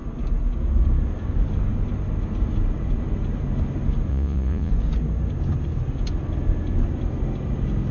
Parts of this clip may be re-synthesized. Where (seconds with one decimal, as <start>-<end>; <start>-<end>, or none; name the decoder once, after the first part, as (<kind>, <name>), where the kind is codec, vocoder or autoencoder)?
4.1-4.7 (vocoder, Vocos)